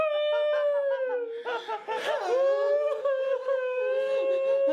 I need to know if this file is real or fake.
real